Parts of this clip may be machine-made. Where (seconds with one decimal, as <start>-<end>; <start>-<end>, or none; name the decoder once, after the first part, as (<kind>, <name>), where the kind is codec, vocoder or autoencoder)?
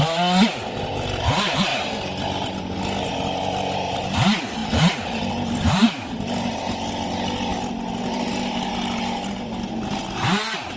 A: none